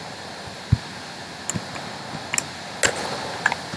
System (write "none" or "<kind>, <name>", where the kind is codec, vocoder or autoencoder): none